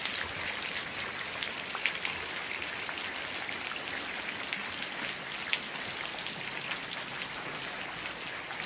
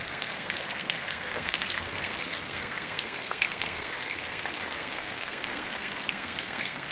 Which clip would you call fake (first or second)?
second